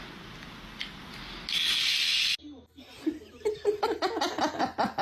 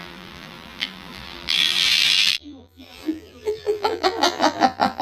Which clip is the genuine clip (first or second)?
first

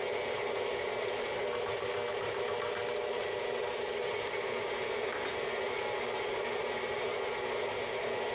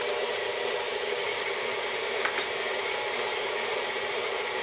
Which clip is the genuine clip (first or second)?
first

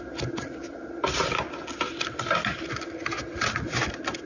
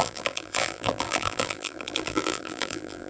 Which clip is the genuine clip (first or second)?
first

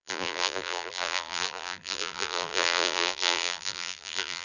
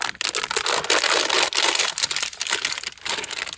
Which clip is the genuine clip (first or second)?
second